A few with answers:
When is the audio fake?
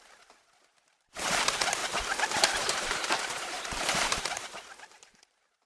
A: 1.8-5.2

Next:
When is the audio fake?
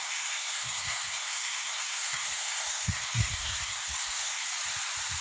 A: 0.0-4.4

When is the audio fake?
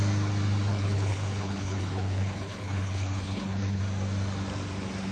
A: 0.7-3.8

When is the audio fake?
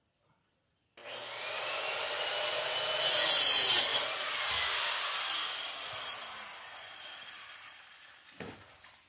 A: none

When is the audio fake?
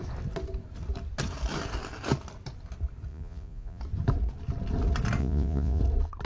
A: 3.1-3.8; 5.2-5.8